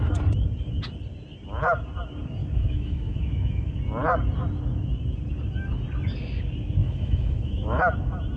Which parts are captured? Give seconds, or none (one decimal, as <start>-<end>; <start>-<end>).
0.0-2.4; 3.8-6.8; 7.8-8.4